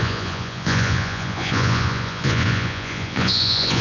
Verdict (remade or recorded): remade